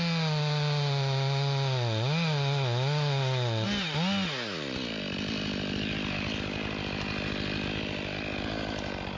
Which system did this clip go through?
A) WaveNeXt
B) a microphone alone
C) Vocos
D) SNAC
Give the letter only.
B